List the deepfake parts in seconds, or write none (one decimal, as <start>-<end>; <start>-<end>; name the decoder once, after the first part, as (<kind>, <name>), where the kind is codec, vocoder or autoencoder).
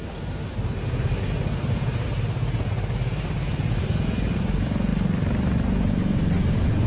none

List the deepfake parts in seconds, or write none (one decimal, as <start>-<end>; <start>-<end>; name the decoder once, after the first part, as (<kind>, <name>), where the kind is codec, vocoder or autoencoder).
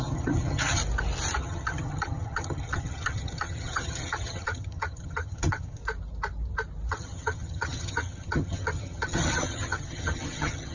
0.0-0.8 (vocoder, HiFi-GAN); 1.4-5.8; 6.9-10.7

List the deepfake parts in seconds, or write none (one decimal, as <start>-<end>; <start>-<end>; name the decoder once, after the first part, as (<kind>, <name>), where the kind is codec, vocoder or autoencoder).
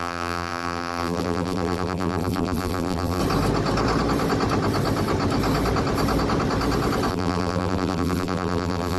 0.0-3.2 (vocoder, BigVGAN v2); 7.1-9.0